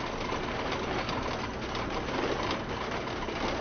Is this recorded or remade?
recorded